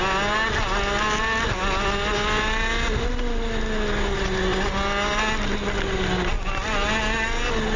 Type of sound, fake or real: real